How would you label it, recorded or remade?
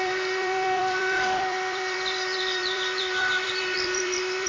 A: remade